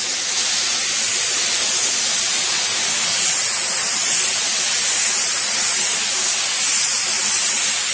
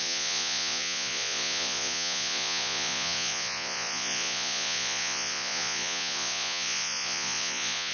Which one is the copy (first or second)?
second